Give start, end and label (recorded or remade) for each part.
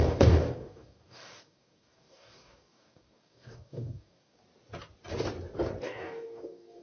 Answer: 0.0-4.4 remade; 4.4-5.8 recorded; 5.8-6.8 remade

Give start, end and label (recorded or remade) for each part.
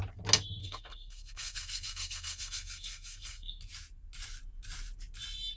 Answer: 0.0-0.6 recorded; 0.6-3.6 remade; 3.6-5.6 recorded